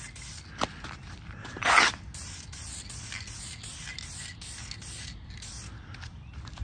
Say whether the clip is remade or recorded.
recorded